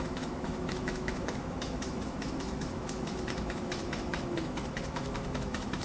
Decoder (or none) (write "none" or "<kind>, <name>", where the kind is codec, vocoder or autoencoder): autoencoder, DAC-VAE